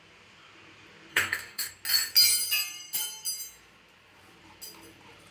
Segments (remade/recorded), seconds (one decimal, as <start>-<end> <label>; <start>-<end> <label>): 0.0-1.1 recorded; 1.1-1.7 remade; 1.7-5.3 recorded